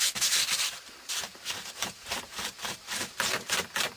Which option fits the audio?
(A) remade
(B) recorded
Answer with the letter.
A